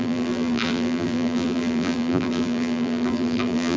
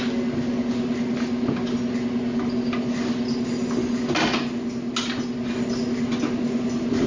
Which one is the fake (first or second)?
first